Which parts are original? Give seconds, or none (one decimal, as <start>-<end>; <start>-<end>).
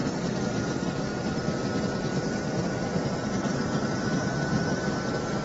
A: 0.0-2.1; 4.8-5.4